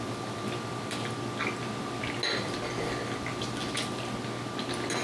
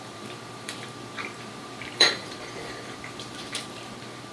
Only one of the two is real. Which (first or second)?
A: first